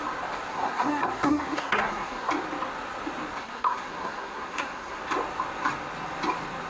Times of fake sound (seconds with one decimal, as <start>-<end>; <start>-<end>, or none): 0.5-2.3; 3.4-5.0